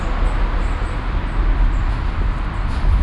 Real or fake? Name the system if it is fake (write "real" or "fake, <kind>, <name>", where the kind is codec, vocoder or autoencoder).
real